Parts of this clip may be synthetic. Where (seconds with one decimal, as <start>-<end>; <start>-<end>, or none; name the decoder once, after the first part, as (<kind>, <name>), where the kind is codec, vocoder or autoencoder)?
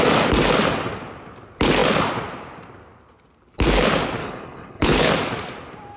4.2-5.1 (codec, HILCodec)